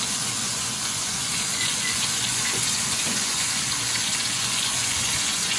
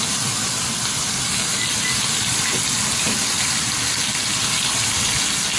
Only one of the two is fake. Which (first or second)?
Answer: first